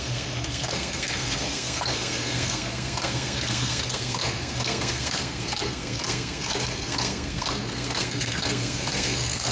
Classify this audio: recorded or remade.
remade